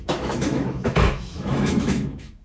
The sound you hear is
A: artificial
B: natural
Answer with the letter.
A